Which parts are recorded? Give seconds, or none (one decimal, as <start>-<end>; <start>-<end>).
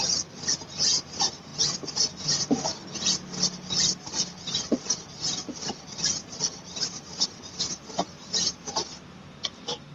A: 0.0-9.9